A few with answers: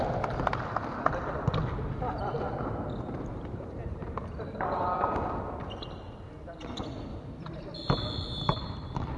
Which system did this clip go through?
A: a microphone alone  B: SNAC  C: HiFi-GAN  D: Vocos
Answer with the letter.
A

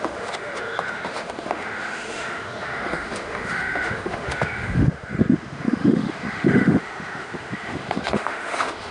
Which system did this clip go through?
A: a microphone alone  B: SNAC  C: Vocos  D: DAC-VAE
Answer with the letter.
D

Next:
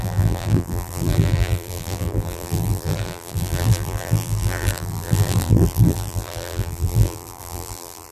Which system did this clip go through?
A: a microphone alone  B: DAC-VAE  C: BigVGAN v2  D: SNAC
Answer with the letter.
C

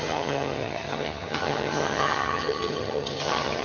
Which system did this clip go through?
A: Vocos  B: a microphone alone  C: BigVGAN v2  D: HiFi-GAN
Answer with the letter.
D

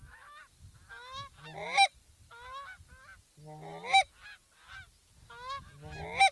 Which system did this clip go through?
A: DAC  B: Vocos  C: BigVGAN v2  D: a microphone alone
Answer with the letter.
D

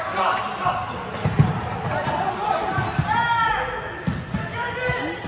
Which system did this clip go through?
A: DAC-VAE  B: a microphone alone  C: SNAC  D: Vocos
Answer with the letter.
B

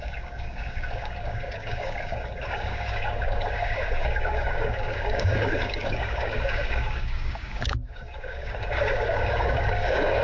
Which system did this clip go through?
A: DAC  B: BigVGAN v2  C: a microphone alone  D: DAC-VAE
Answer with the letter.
A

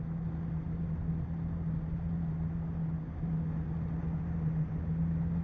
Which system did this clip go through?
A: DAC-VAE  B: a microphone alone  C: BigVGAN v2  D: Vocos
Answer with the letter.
B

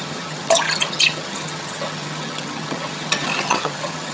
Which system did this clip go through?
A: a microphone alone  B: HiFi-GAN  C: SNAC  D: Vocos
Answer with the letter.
B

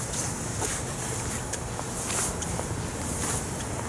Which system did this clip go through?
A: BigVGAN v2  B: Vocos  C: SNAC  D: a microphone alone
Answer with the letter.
D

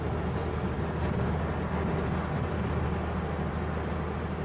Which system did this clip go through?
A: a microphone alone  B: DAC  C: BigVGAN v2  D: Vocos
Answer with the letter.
A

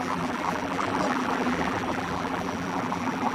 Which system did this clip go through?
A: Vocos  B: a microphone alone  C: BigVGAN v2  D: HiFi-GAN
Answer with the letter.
C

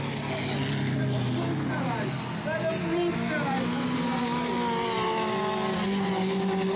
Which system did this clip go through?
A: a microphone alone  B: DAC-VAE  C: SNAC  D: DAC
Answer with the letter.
A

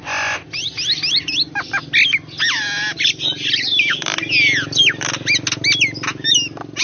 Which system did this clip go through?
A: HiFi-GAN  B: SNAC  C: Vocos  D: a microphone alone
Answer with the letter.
D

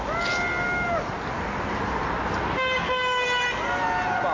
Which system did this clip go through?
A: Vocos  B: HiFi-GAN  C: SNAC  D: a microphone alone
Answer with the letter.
D